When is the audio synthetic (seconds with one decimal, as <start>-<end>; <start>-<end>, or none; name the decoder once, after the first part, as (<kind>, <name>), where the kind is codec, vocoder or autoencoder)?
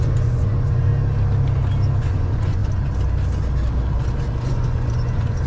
0.0-0.9 (vocoder, Vocos); 2.0-2.6; 4.4-5.5